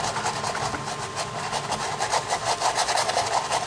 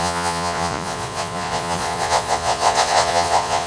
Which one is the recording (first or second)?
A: first